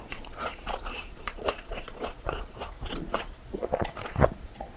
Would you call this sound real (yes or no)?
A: no